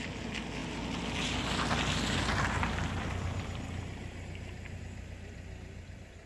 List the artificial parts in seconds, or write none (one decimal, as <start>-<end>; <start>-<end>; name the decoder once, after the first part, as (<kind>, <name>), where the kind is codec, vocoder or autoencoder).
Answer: none